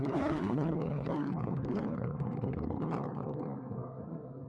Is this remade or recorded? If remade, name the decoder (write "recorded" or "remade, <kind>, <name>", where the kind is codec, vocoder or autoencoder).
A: remade, codec, SNAC